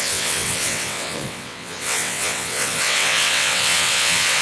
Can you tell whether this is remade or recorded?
remade